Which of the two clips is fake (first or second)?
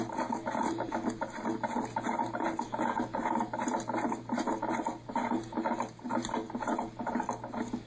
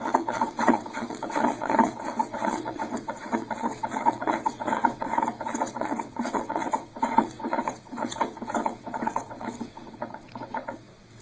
second